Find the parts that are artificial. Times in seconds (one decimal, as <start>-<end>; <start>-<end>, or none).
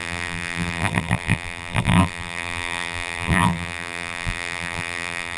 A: 0.0-5.4